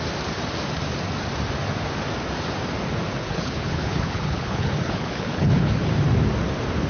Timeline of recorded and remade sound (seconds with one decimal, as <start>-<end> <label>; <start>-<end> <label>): 0.0-3.2 recorded; 3.2-5.9 remade; 5.9-6.9 recorded